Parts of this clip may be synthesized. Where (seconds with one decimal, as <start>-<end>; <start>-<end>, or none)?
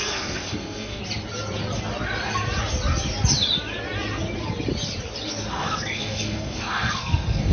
0.0-1.0; 5.5-7.5